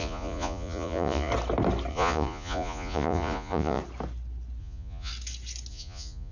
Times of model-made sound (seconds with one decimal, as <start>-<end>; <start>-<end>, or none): 0.0-1.3; 1.9-3.8; 4.6-5.1; 5.7-6.3